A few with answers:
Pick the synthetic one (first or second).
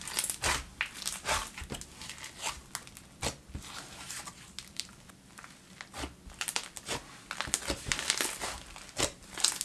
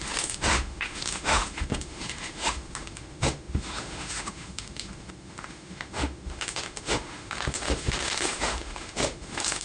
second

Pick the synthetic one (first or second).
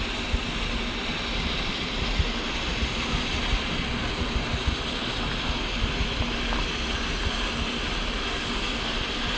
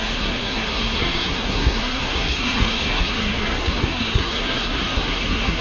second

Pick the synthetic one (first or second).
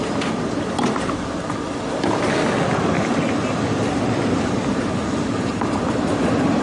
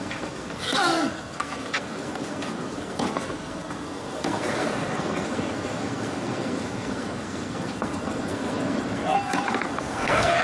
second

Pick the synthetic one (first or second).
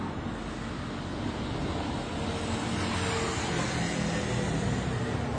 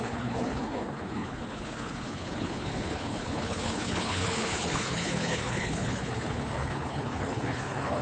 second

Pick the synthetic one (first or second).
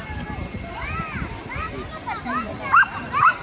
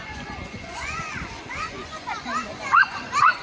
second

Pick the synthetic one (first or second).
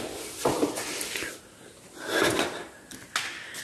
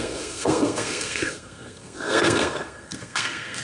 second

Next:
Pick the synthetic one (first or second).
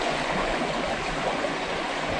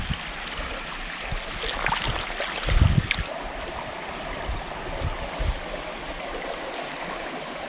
first